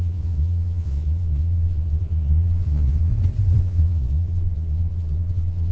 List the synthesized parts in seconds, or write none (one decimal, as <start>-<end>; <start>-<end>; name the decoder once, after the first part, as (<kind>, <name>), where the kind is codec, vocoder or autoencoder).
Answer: 0.0-3.1 (vocoder, Vocos); 3.6-5.7